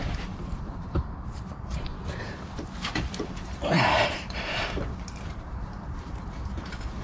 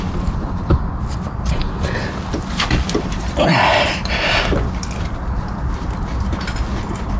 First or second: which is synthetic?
first